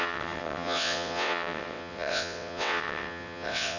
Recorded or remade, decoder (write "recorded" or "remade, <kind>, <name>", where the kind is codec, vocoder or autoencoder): remade, vocoder, WaveNeXt